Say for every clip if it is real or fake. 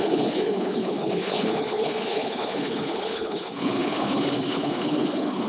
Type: fake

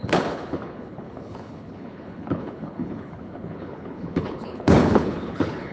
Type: fake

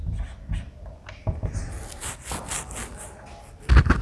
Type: real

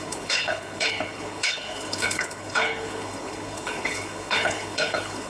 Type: fake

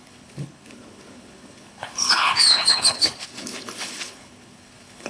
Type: fake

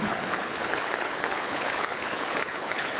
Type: fake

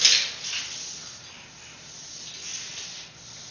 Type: real